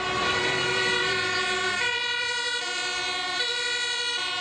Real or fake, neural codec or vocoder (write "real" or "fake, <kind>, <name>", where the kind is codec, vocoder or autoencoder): fake, vocoder, BigVGAN v2